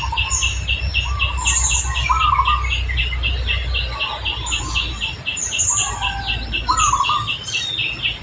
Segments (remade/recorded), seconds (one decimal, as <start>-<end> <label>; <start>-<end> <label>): 0.0-8.2 recorded